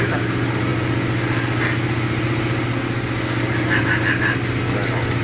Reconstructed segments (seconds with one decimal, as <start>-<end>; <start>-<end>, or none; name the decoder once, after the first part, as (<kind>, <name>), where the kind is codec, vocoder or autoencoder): none